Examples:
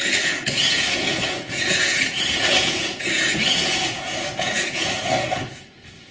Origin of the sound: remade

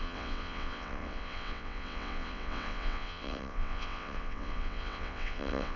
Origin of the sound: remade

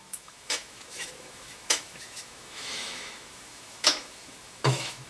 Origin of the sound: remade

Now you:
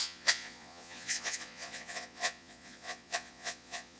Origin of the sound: remade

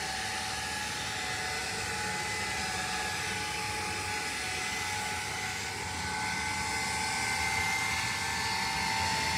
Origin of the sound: recorded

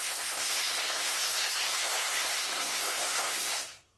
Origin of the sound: remade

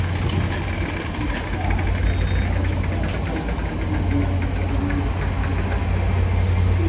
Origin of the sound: recorded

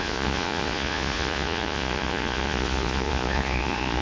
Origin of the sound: remade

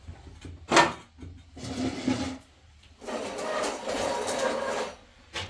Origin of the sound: recorded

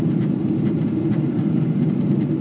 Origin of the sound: recorded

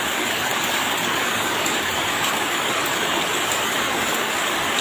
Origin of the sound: remade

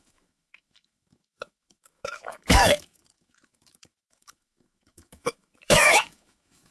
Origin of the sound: remade